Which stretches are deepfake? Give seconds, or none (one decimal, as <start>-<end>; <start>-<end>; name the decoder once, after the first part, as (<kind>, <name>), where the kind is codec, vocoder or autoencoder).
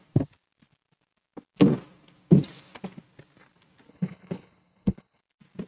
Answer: 3.9-5.2 (codec, HILCodec)